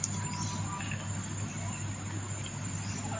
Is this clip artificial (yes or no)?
no